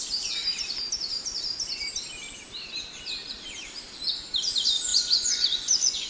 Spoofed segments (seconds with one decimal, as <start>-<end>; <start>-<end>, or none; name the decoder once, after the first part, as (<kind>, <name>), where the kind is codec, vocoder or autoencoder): 4.9-6.1 (vocoder, Vocos)